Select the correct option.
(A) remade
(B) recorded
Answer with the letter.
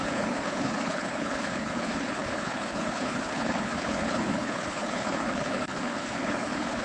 A